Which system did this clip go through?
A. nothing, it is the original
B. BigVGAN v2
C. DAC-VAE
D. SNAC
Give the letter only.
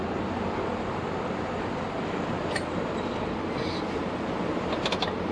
A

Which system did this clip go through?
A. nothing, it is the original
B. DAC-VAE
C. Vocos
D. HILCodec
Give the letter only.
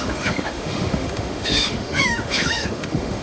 B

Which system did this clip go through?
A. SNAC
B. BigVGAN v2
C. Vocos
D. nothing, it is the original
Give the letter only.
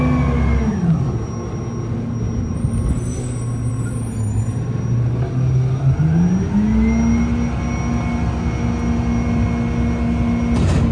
D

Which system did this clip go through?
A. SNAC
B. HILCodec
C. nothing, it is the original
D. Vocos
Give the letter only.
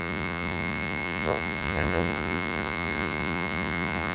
D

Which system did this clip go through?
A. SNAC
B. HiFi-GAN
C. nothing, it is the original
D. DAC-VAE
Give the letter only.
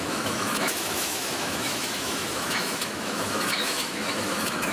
D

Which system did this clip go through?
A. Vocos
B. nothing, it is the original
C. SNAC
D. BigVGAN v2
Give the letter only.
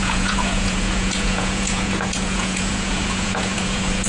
A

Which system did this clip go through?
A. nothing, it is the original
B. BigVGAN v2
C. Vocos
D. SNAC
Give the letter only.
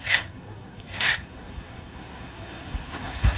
D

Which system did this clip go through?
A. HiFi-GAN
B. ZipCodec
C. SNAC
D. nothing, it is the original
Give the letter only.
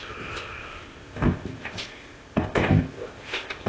B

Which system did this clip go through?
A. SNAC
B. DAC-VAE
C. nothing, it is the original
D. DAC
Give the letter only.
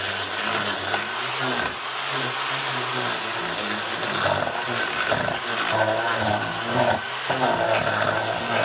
C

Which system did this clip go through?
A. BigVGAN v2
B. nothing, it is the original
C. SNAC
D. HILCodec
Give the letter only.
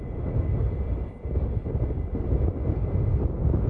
B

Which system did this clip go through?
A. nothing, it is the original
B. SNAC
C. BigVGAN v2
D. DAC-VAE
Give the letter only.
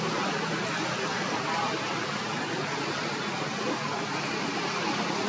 A